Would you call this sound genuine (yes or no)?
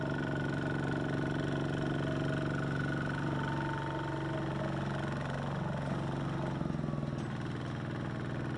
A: yes